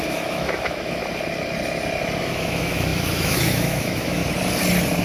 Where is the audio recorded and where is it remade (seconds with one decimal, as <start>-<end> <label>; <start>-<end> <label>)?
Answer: 0.0-1.0 remade; 1.0-2.2 recorded; 2.2-4.2 remade; 4.2-5.0 recorded